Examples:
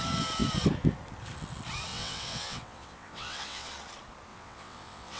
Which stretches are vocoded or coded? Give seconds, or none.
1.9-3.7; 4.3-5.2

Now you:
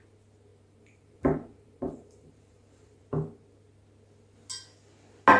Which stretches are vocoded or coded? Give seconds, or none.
0.5-3.0

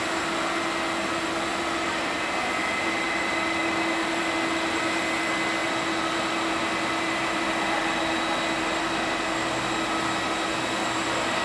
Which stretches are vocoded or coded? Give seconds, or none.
1.5-2.3